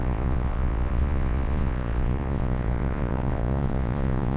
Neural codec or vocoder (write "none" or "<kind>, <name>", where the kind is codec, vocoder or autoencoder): vocoder, Vocos